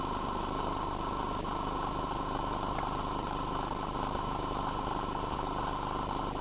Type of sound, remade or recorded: recorded